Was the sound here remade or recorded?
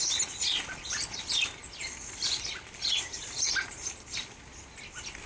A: recorded